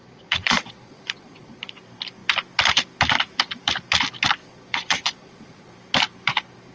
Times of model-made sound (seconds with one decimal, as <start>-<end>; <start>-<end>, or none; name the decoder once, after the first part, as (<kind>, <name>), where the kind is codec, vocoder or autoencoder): 0.0-1.8 (vocoder, Vocos); 4.4-5.7